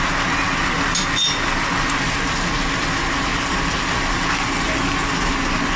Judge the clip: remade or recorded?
recorded